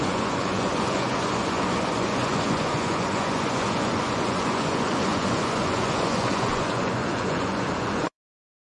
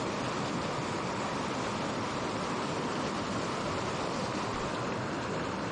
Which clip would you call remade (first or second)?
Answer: first